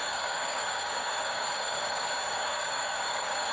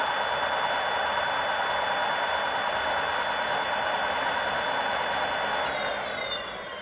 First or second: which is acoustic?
second